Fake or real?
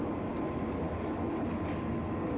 real